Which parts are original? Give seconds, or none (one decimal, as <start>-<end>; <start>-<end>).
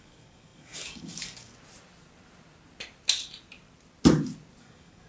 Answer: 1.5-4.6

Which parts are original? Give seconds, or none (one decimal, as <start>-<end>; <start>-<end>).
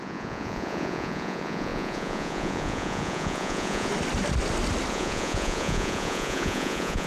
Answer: 3.9-4.9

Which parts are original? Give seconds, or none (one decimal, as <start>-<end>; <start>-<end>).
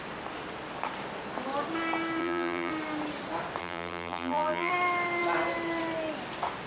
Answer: 0.0-2.2; 2.7-3.6; 4.7-6.7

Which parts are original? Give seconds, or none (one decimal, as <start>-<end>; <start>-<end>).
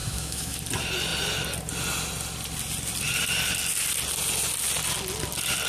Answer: 0.6-5.7